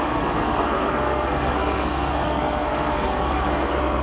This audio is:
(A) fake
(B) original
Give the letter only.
A